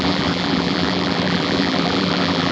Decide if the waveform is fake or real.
fake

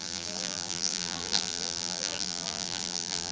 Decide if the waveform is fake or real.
fake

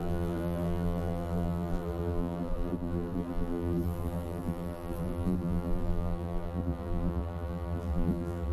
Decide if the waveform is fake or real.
fake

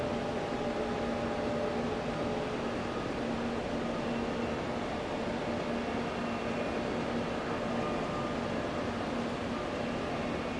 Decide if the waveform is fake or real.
real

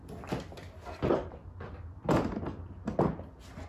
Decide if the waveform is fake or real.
real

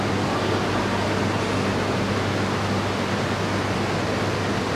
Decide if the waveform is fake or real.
real